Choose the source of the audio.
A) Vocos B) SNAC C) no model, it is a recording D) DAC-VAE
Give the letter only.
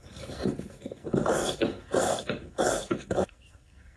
B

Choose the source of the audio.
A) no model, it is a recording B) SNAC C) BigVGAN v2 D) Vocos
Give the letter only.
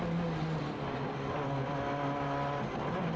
A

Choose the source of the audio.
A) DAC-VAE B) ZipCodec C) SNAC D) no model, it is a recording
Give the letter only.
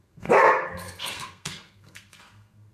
C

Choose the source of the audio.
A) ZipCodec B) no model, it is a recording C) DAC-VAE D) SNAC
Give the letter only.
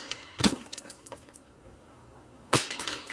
D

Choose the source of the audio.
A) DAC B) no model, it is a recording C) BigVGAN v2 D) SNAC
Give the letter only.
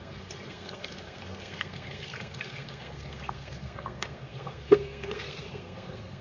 D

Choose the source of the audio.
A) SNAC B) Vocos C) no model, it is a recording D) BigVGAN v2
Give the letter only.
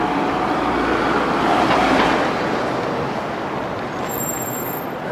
C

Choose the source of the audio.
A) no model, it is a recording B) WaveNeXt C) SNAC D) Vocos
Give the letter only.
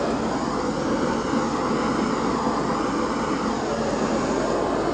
A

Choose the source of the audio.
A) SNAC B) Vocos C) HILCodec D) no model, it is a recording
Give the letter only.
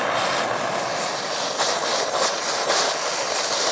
D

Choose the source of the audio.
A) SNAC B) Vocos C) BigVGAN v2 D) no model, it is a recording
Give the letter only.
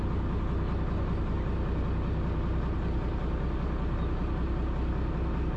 D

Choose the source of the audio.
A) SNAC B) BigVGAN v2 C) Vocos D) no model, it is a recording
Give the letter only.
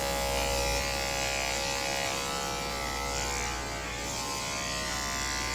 D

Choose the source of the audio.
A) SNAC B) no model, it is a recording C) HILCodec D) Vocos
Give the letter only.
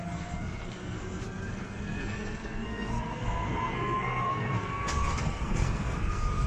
A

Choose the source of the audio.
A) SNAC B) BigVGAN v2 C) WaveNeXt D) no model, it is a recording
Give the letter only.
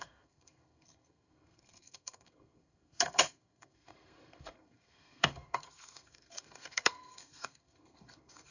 A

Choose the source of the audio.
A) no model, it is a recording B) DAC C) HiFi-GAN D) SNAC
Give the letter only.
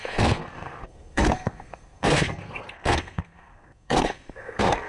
D